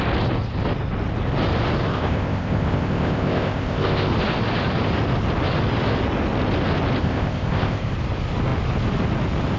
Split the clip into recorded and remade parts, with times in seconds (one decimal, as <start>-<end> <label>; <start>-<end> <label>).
0.0-1.9 recorded; 1.9-4.1 remade; 4.1-7.0 recorded; 7.0-7.9 remade; 7.9-9.6 recorded